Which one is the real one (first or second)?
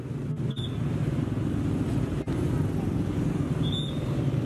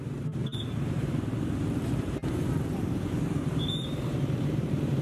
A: first